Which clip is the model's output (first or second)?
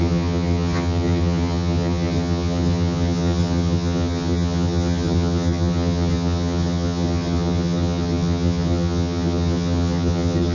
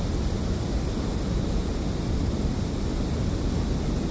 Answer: first